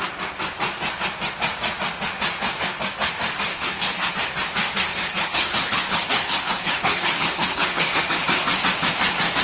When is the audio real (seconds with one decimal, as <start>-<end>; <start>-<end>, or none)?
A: 0.0-3.5; 4.1-4.9; 8.0-9.4